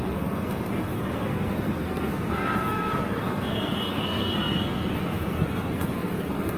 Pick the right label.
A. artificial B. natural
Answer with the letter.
A